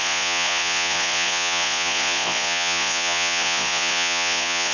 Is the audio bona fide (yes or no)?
no